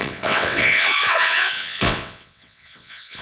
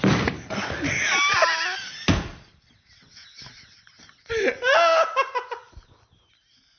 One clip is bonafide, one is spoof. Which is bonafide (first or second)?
second